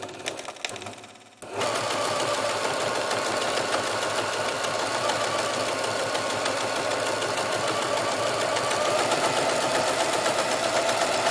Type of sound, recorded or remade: recorded